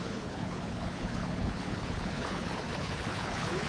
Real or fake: fake